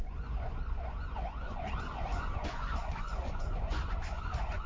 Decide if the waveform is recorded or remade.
remade